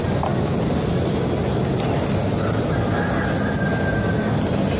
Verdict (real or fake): real